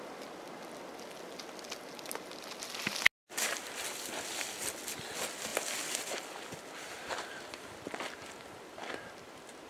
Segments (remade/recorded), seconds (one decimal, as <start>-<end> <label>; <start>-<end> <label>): 0.0-9.7 recorded